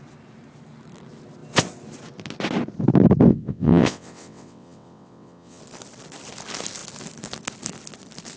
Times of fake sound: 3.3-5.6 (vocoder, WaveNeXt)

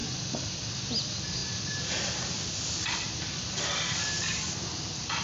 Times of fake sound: 0.0-0.8 (vocoder, BigVGAN v2); 1.4-4.5

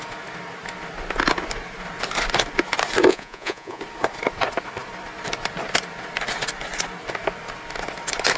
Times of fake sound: 3.1-3.8 (vocoder, Vocos)